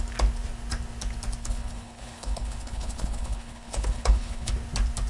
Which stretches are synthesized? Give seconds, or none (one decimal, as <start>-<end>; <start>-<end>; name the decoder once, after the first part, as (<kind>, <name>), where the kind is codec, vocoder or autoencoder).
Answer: 1.4-4.5 (codec, HILCodec)